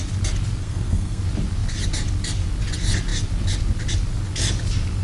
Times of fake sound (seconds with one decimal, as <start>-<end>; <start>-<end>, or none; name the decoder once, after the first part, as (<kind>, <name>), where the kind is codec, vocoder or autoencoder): 0.6-1.2 (codec, SNAC)